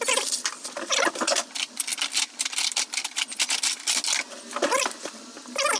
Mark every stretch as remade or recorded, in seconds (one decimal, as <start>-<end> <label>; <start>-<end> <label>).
0.0-1.9 remade; 1.9-5.8 recorded